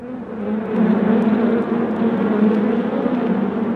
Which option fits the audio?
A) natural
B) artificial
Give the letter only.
A